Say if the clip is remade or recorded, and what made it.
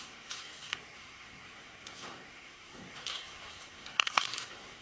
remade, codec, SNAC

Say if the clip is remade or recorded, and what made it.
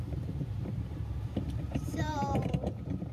remade, vocoder, BigVGAN v2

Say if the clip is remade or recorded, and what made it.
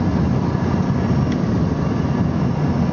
recorded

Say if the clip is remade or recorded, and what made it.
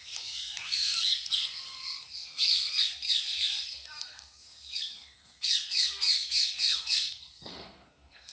remade, codec, SNAC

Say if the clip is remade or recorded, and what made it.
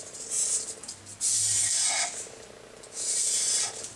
recorded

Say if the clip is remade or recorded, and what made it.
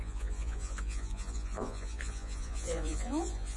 remade, vocoder, Vocos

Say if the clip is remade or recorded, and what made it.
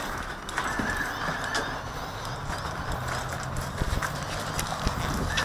recorded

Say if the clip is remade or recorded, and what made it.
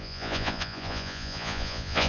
remade, vocoder, Vocos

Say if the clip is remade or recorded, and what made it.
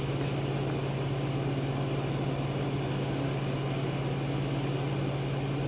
recorded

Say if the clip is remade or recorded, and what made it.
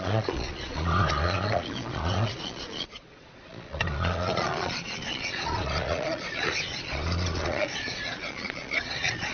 remade, vocoder, Vocos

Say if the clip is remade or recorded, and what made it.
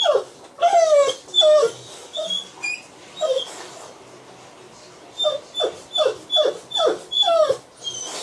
recorded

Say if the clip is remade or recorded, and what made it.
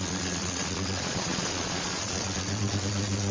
remade, vocoder, Vocos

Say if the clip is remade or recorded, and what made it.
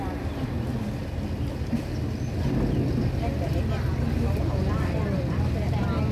recorded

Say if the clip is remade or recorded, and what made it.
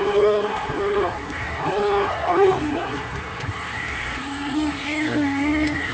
remade, codec, SNAC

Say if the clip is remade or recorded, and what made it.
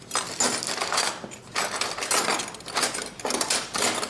recorded